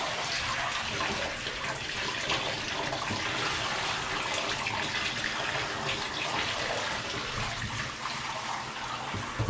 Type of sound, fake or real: real